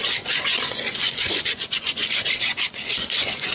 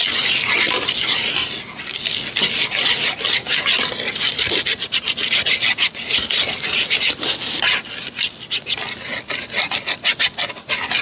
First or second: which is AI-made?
first